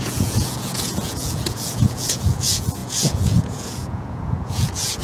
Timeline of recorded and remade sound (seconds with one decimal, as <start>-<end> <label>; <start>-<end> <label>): 0.0-5.0 remade